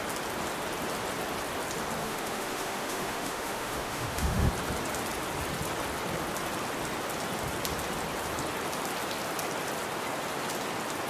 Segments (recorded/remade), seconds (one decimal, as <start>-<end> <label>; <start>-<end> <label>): 0.0-2.0 recorded; 2.0-4.5 remade; 4.5-11.1 recorded